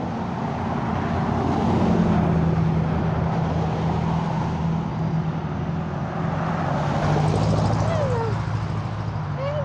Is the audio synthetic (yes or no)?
no